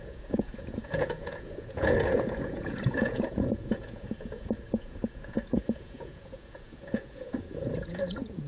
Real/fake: fake